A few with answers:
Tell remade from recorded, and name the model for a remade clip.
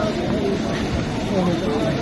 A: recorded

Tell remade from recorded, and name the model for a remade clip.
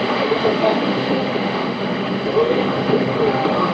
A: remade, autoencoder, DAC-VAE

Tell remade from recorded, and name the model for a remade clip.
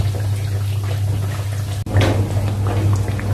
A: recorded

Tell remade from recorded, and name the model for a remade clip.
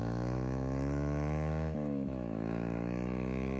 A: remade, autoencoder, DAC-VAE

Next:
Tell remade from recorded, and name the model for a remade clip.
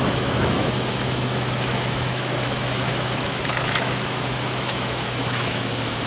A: remade, autoencoder, DAC-VAE